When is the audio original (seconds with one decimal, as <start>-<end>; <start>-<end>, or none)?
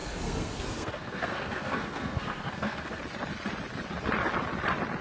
3.0-5.0